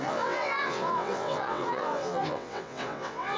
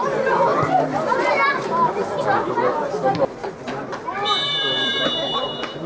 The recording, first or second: second